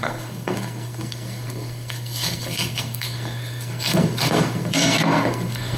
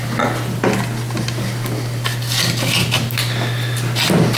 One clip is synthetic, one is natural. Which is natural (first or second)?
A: second